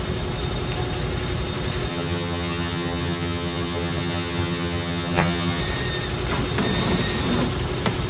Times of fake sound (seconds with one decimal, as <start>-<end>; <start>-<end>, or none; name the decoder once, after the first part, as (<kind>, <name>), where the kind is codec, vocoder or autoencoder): 1.9-5.6 (vocoder, HiFi-GAN)